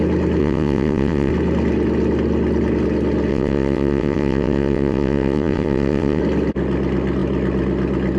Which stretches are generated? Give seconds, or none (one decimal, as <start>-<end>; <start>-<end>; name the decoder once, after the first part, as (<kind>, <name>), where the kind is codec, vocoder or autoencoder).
0.4-1.3 (vocoder, WaveNeXt); 3.3-6.2